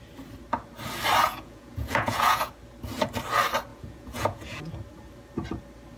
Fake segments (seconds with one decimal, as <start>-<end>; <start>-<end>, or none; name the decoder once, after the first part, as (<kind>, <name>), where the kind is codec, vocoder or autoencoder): 1.2-2.5 (vocoder, Vocos); 3.7-4.7